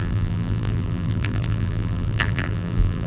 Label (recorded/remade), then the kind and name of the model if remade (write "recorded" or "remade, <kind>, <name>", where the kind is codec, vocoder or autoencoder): remade, vocoder, BigVGAN v2